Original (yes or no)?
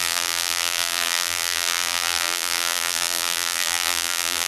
no